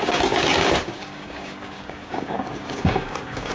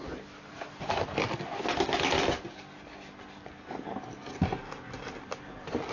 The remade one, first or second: first